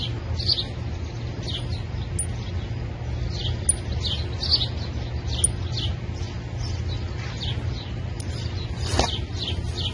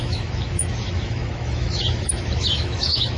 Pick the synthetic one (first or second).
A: second